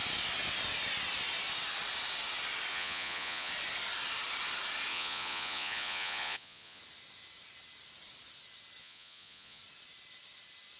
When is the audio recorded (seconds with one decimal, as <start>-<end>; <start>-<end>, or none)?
0.0-2.7; 3.5-4.9; 6.8-8.8; 9.6-10.8